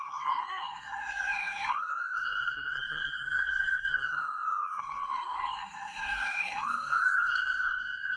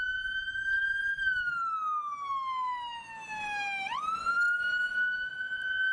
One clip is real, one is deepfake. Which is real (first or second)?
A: second